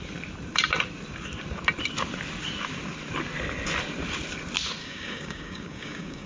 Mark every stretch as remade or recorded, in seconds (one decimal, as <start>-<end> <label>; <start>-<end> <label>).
0.0-4.8 recorded; 4.8-6.3 remade